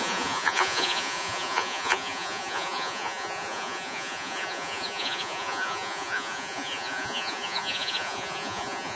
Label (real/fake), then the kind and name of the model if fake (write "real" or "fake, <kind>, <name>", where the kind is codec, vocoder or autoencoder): fake, vocoder, Vocos